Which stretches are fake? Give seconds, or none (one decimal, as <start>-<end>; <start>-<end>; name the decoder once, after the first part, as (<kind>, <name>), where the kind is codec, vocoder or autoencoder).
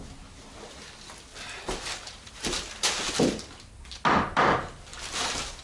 1.3-3.1 (vocoder, BigVGAN v2)